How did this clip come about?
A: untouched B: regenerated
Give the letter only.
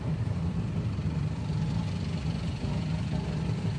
B